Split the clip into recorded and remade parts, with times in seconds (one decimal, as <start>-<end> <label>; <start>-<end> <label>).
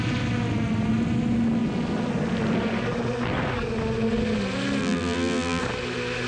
0.0-4.8 recorded; 4.8-5.6 remade; 5.6-6.3 recorded